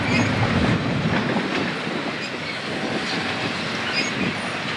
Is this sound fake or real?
real